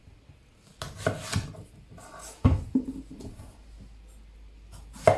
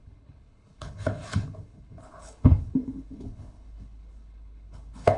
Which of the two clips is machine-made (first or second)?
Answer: second